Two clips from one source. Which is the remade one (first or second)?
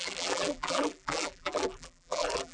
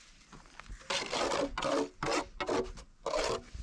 first